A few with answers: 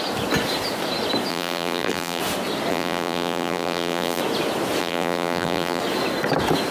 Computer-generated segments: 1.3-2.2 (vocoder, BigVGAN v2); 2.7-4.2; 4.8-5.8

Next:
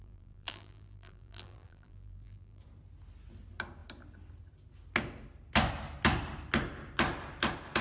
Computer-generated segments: 0.0-2.6 (vocoder, BigVGAN v2)

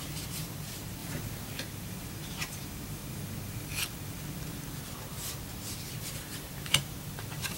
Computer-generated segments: 0.0-1.0 (vocoder, BigVGAN v2); 1.6-3.0; 5.9-7.6

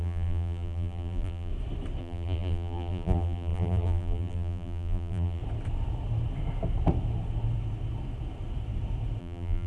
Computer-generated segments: 0.0-1.5 (vocoder, BigVGAN v2); 2.0-5.4; 9.2-9.7

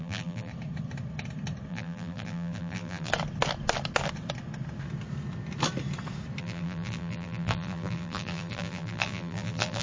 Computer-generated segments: 0.0-0.5 (vocoder, BigVGAN v2); 1.7-3.1; 6.4-9.8